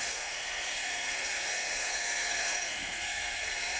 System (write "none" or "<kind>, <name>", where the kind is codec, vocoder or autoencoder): codec, SNAC